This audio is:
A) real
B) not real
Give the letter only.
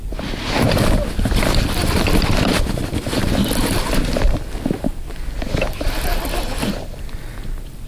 B